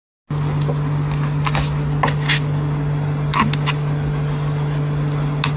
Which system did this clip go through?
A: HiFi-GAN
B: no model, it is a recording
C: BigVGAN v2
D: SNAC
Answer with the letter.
B